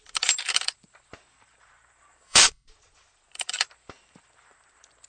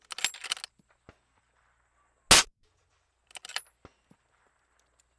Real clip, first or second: second